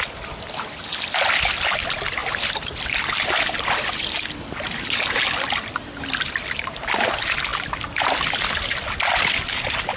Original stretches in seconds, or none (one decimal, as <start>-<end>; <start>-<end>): 0.0-10.0